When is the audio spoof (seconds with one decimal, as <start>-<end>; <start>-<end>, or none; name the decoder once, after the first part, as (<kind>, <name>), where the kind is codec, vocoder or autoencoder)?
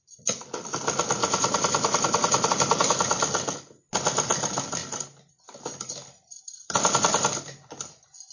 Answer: 1.2-2.5 (vocoder, BigVGAN v2)